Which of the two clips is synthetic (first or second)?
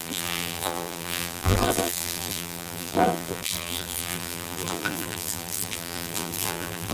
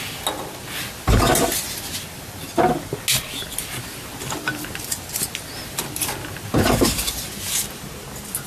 first